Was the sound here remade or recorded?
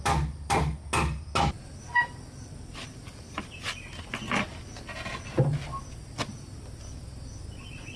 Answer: recorded